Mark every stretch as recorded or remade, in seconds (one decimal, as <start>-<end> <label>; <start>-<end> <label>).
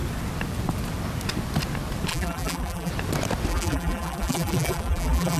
0.0-2.1 recorded; 2.1-2.9 remade; 2.9-3.5 recorded; 3.5-5.4 remade